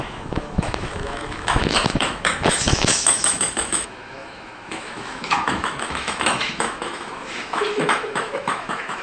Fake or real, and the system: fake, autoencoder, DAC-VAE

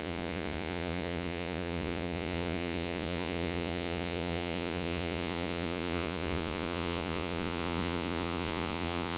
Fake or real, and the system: fake, vocoder, Vocos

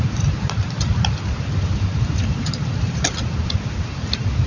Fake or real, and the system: fake, vocoder, BigVGAN v2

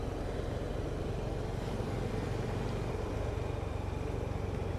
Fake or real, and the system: real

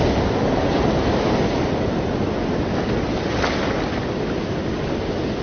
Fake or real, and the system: real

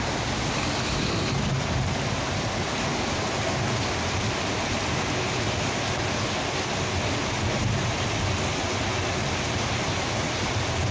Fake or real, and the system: real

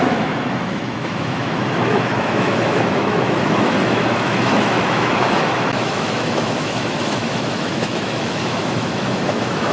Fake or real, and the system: fake, autoencoder, DAC-VAE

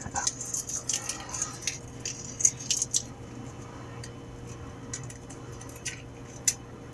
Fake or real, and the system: real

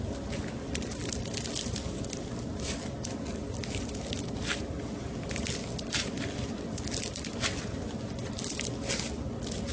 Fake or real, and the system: real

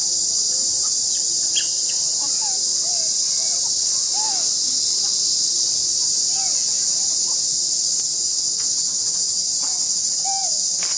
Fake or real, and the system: real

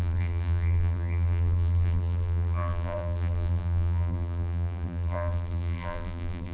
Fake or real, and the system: fake, vocoder, BigVGAN v2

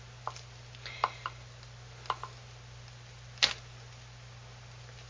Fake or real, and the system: real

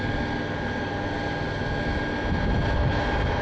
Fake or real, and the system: real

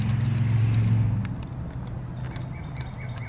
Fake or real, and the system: real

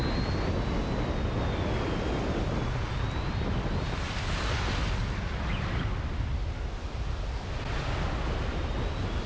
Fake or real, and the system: real